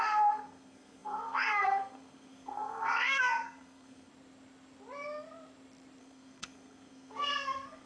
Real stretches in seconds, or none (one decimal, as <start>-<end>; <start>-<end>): 4.1-6.0